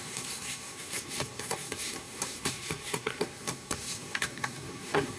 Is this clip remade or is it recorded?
remade